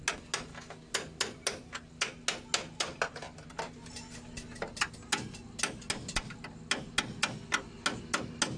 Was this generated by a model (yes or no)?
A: no